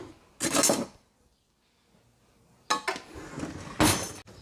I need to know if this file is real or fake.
real